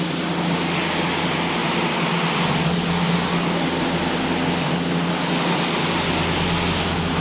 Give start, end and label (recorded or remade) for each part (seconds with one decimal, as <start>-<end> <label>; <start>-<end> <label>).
0.0-7.2 recorded